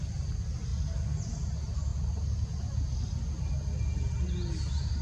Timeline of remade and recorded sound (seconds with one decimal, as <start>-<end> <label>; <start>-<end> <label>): 0.0-5.0 recorded